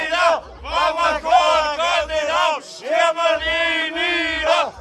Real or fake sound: real